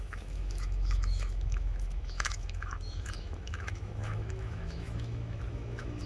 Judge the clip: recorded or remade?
remade